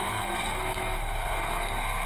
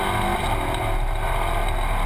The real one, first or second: second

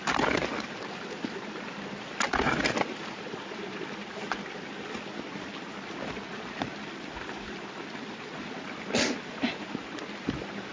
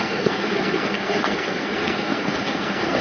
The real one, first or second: first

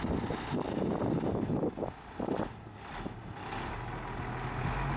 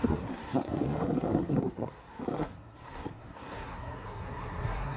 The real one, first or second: first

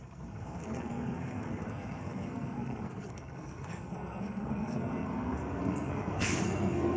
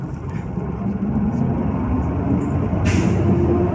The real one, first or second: second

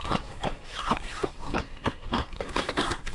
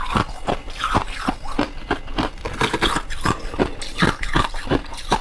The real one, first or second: second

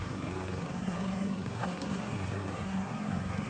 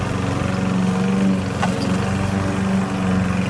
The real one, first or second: second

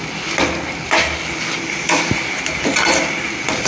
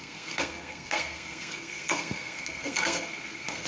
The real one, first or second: first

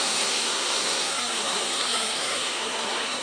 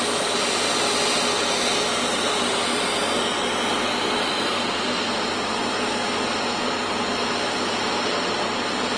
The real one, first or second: second